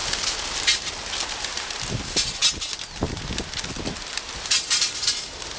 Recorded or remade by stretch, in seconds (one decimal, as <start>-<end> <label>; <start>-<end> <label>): 0.0-5.6 recorded